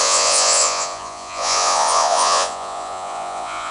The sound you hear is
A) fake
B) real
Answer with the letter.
A